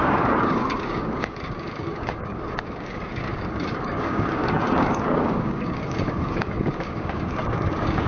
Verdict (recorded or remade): remade